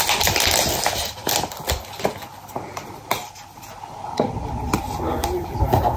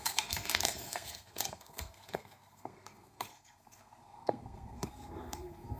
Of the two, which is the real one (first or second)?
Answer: first